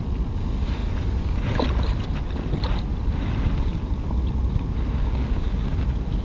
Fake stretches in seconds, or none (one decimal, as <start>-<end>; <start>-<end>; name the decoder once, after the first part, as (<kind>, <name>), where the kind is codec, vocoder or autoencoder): 5.0-5.8 (codec, DAC)